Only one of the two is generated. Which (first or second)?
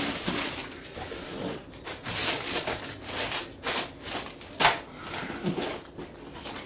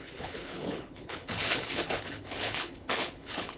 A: second